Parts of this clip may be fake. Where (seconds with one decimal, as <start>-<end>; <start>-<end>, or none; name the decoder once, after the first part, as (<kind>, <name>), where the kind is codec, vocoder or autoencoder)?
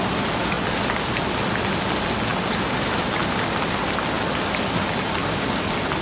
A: none